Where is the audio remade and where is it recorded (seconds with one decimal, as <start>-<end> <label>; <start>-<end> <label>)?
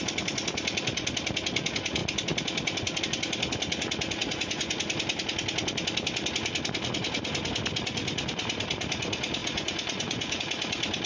0.0-4.2 recorded; 4.2-4.8 remade; 4.8-9.4 recorded; 9.4-10.4 remade; 10.4-11.1 recorded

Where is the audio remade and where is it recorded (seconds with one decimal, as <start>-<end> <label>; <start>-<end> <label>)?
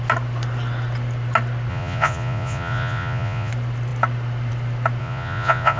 0.0-1.7 recorded; 1.7-3.5 remade; 3.5-5.0 recorded; 5.0-5.8 remade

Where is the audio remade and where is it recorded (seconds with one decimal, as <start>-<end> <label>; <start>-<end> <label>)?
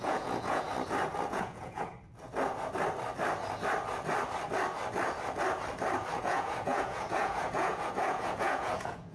0.0-0.7 remade; 0.7-1.3 recorded; 1.3-1.9 remade; 1.9-6.2 recorded; 6.2-9.1 remade